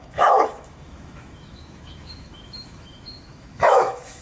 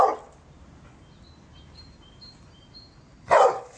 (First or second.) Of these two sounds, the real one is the second